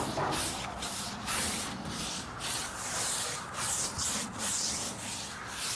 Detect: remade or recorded recorded